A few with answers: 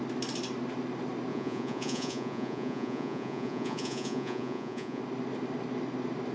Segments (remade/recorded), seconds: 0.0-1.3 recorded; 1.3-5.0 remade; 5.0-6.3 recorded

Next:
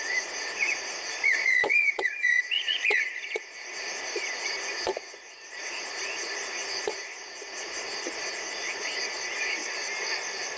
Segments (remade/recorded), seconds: 0.0-9.6 remade; 9.6-10.6 recorded

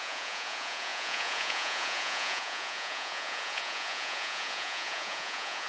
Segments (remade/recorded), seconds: 0.0-5.7 remade

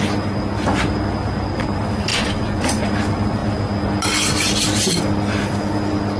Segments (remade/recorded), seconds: 0.0-2.1 recorded; 2.1-2.8 remade; 2.8-6.2 recorded